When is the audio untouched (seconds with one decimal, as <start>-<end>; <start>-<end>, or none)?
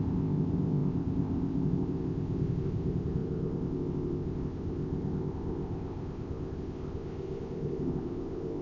none